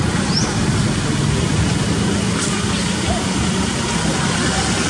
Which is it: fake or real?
real